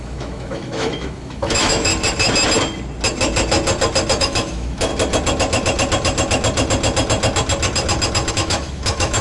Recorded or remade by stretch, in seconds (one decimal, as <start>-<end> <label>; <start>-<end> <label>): 0.0-1.9 remade; 1.9-4.2 recorded; 4.2-4.9 remade; 4.9-8.3 recorded; 8.3-9.2 remade